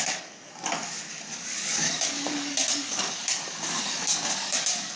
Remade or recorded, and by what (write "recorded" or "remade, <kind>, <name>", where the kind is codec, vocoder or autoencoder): remade, codec, DAC